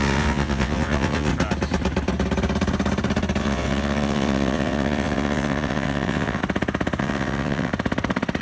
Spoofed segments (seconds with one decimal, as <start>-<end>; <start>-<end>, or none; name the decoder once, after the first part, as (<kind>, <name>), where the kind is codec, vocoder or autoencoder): 0.0-1.3 (vocoder, WaveNeXt); 3.4-6.4; 7.0-7.7